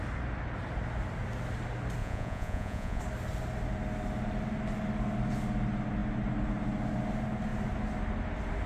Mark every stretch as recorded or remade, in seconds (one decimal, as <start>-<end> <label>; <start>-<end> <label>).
0.0-2.0 recorded; 2.0-3.0 remade; 3.0-8.7 recorded